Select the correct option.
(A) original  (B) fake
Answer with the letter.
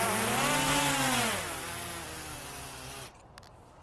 A